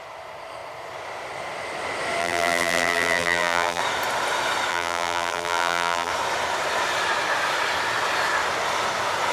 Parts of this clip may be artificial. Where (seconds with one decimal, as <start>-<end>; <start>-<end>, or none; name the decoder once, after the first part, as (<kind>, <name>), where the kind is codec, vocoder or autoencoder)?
2.2-3.8 (vocoder, BigVGAN v2); 4.7-6.1